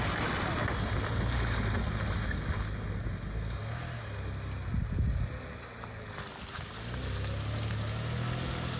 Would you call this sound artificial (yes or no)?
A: no